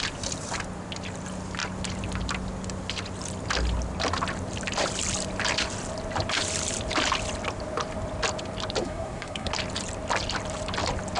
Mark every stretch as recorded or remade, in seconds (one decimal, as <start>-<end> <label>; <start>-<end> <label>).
0.0-8.8 recorded; 8.8-9.5 remade; 9.5-11.2 recorded